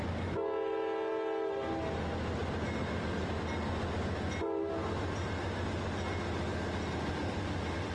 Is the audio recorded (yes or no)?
yes